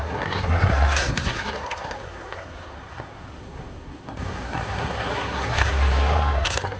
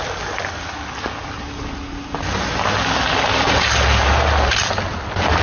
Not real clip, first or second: first